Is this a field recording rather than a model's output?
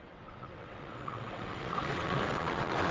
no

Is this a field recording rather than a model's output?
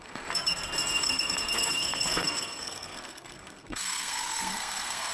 no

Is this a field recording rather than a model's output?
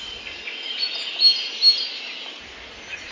yes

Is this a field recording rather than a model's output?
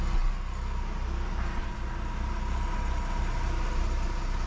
yes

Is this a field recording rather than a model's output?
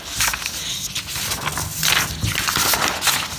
yes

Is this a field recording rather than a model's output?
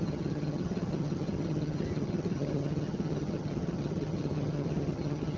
no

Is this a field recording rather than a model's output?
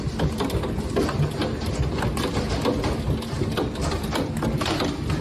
yes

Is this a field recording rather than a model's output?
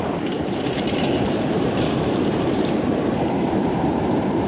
no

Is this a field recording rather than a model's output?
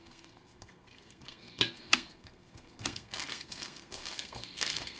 no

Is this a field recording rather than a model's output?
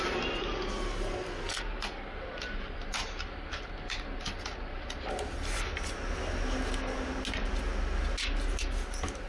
yes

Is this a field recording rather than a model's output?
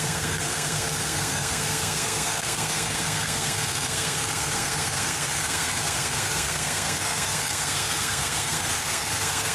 no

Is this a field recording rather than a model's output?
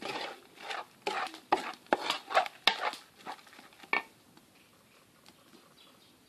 yes